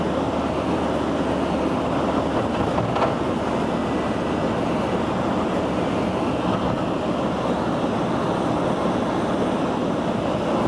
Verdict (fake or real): real